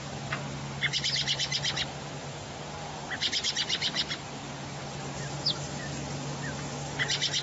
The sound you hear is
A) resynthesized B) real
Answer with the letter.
B